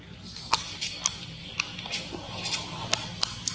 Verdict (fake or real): real